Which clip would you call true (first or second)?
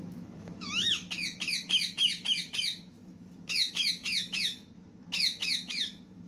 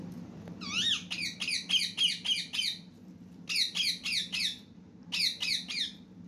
second